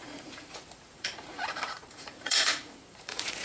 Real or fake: fake